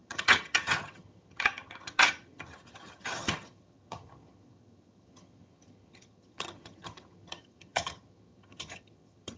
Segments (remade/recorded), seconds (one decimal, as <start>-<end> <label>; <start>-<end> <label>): 0.0-9.4 remade